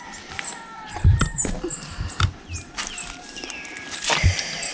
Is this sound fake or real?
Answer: real